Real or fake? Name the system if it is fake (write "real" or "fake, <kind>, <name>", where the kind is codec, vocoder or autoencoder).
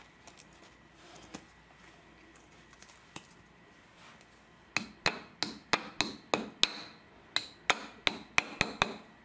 real